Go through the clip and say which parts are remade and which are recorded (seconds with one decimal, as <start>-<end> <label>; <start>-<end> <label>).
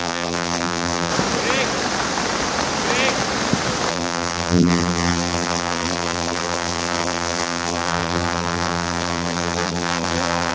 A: 0.0-1.1 remade; 1.1-3.9 recorded; 3.9-10.5 remade